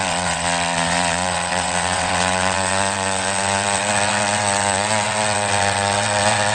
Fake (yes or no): yes